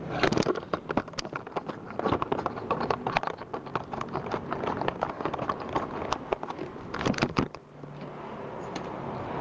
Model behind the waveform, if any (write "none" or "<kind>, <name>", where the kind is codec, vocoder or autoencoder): none